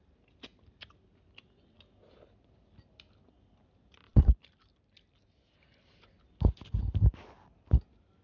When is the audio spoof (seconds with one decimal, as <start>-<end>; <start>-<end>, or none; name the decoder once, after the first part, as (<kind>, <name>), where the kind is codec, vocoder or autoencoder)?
none